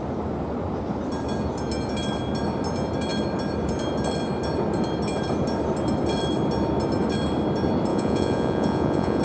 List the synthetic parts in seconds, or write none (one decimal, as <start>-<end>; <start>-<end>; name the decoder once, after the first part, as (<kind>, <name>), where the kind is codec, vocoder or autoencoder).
7.9-9.2 (vocoder, Vocos)